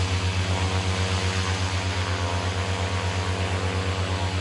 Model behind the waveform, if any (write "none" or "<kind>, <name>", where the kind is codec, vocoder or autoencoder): none